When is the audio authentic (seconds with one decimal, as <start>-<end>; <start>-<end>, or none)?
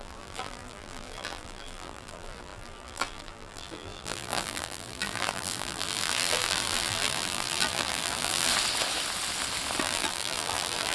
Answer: 8.5-9.8